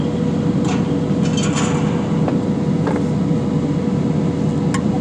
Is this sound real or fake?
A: real